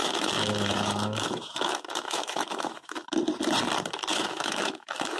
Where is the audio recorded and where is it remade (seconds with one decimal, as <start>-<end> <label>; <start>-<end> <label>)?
0.0-3.1 remade; 3.1-4.1 recorded; 4.1-5.2 remade